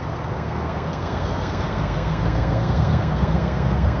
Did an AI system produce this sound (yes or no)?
yes